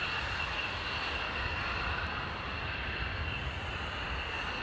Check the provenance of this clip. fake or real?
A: real